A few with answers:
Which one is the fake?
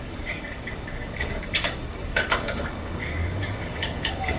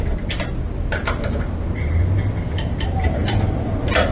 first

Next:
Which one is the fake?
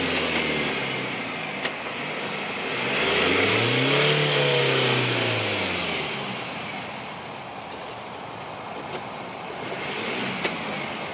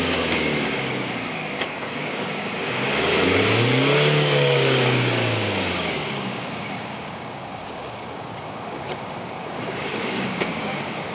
second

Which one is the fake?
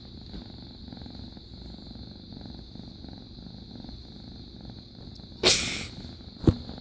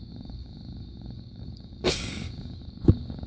second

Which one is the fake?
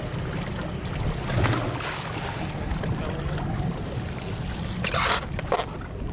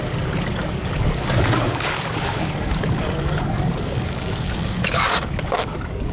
second